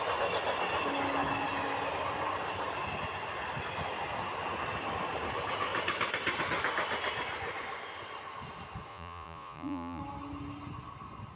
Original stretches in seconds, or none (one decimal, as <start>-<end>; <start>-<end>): 0.0-8.9; 10.0-11.4